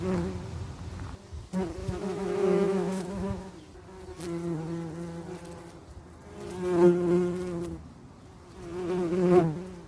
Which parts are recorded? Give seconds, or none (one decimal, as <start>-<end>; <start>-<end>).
0.0-1.8; 3.5-9.9